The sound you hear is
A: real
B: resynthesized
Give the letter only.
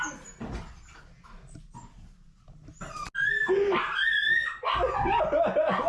A